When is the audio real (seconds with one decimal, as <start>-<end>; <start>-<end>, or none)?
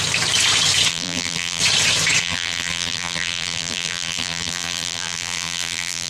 0.0-0.9; 1.6-2.2